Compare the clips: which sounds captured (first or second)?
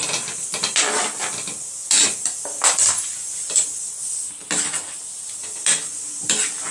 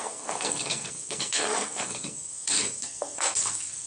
first